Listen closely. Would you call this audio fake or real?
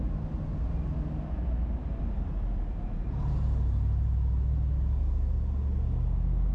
real